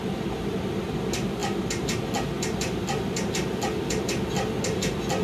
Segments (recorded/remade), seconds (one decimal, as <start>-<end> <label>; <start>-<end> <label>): 0.0-5.2 recorded